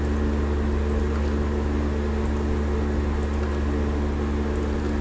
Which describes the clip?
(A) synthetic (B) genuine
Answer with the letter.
B